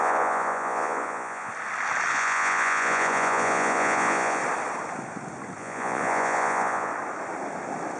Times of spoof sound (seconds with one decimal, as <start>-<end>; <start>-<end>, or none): 0.0-1.5; 2.1-4.4; 5.6-6.9